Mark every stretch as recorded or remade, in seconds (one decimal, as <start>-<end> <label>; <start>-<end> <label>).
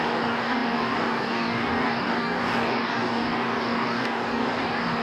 0.0-5.0 remade